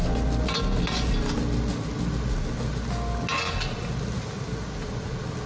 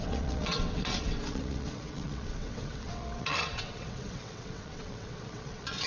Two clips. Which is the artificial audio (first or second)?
second